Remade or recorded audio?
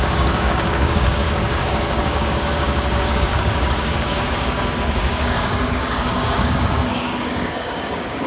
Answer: remade